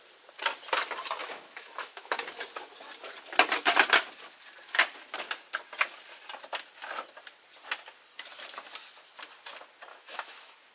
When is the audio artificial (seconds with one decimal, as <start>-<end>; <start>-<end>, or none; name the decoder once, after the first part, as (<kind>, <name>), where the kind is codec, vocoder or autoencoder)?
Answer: 1.2-2.2 (autoencoder, DAC-VAE); 9.9-10.7